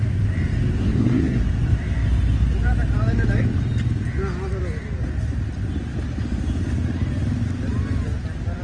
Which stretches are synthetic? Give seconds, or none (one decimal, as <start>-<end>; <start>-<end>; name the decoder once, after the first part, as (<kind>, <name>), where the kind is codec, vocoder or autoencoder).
0.8-1.5 (codec, SNAC)